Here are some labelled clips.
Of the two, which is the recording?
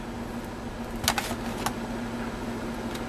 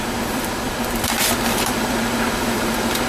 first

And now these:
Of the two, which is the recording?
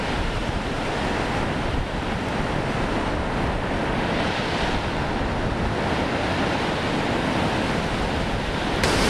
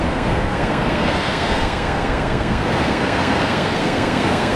first